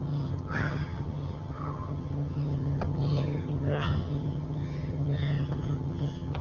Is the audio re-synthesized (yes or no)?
yes